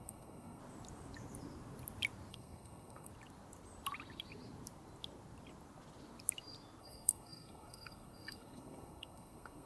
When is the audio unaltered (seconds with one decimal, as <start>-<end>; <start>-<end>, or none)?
0.6-2.3; 3.1-6.8